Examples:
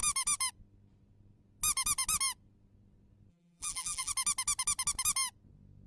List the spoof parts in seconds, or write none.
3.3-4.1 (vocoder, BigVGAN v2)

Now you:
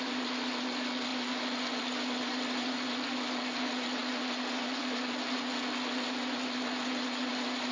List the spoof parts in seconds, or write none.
none